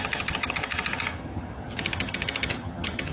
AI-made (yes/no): yes